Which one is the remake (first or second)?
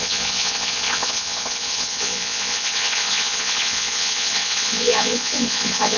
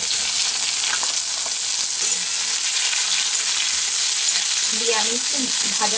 first